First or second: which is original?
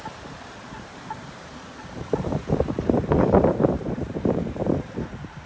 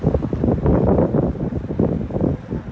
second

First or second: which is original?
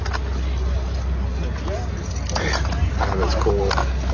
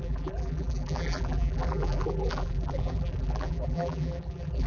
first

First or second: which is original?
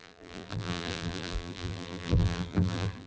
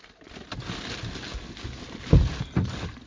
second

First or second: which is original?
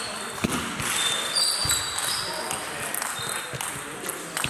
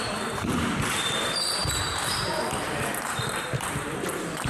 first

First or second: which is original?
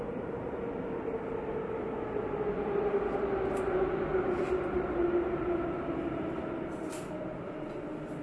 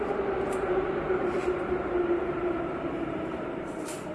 first